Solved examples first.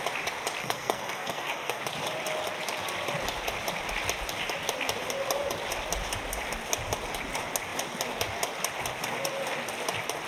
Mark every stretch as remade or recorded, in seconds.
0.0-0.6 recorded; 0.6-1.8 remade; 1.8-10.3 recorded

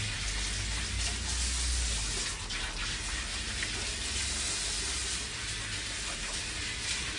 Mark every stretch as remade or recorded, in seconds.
0.0-5.0 recorded; 5.0-6.3 remade; 6.3-7.2 recorded

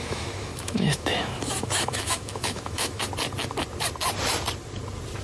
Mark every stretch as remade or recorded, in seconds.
0.0-3.1 remade; 3.1-5.2 recorded